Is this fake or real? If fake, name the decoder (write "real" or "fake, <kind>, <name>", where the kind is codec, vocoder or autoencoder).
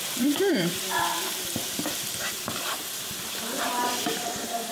fake, vocoder, BigVGAN v2